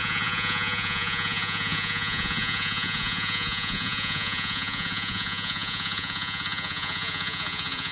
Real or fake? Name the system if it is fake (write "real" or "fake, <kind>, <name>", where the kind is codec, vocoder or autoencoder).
fake, vocoder, Vocos